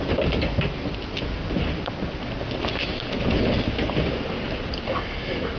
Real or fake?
real